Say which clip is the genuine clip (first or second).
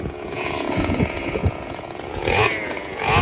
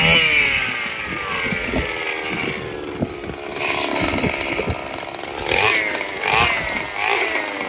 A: second